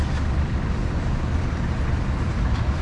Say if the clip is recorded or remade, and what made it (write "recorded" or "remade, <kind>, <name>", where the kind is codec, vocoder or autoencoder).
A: recorded